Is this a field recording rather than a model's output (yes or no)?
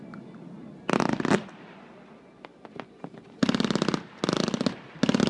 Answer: yes